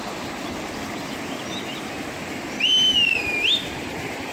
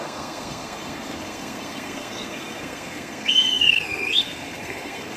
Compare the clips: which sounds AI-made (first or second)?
second